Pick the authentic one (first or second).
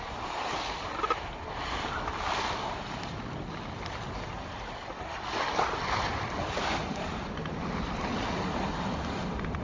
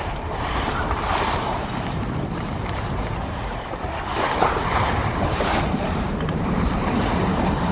first